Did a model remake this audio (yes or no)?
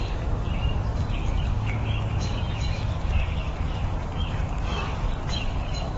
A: yes